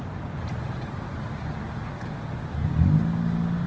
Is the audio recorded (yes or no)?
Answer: yes